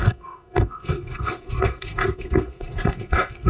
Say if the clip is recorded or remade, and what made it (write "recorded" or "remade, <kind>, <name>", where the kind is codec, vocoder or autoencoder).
remade, codec, SNAC